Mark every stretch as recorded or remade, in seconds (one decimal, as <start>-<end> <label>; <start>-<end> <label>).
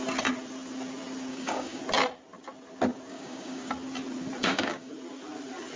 0.0-1.3 recorded; 1.3-1.8 remade; 1.8-3.1 recorded; 3.1-3.7 remade; 3.7-4.4 recorded; 4.4-4.9 remade; 4.9-5.8 recorded